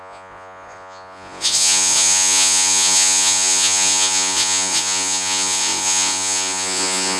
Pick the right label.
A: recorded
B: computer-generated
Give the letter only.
B